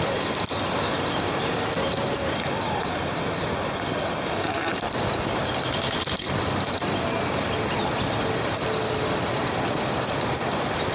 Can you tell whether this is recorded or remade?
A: recorded